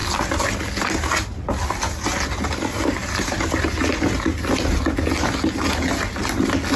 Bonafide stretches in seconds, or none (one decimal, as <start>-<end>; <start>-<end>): 0.0-6.8